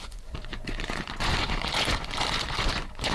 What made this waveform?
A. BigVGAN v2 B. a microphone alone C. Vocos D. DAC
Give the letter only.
C